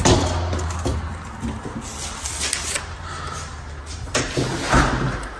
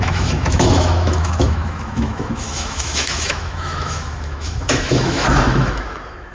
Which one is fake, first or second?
second